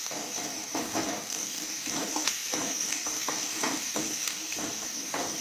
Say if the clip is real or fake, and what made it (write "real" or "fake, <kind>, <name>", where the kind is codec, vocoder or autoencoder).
fake, codec, DAC